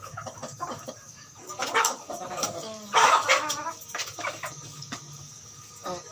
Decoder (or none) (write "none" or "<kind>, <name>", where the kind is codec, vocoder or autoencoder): codec, DAC